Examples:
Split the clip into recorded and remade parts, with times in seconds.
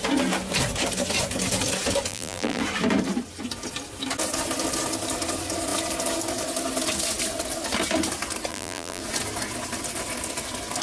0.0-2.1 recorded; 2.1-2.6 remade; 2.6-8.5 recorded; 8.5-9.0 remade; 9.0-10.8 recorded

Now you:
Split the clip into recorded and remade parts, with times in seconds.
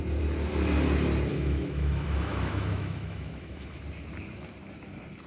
0.0-1.3 recorded; 1.3-3.8 remade; 3.8-5.3 recorded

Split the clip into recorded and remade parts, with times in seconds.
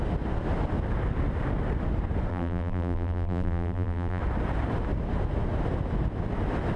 0.0-2.3 recorded; 2.3-4.2 remade; 4.2-6.8 recorded